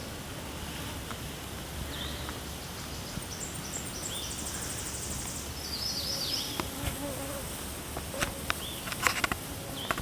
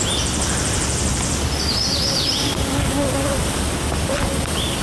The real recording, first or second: first